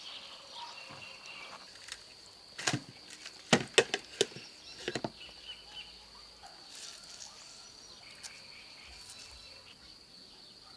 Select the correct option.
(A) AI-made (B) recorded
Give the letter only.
B